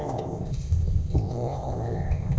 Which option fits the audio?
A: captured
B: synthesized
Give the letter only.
B